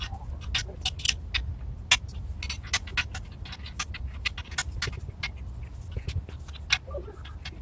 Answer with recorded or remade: recorded